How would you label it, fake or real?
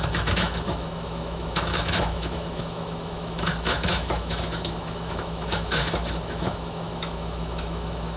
fake